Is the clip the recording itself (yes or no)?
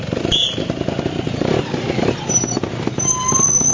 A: yes